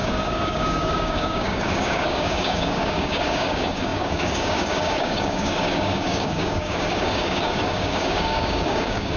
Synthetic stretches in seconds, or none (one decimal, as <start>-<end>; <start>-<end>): 0.0-9.2